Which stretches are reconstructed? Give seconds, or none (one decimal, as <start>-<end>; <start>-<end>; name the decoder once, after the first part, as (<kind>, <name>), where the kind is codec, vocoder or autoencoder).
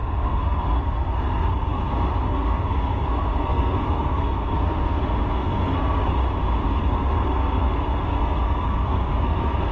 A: 0.0-6.1 (codec, SNAC); 6.7-9.7